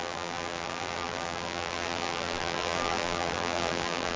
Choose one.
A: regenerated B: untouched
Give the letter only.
A